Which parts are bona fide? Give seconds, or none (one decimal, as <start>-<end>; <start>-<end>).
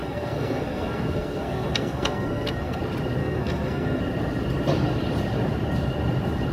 2.8-3.2; 4.0-6.5